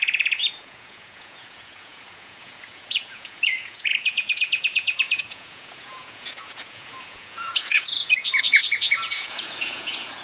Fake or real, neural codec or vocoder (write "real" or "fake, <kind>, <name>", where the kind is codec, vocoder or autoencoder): fake, vocoder, Vocos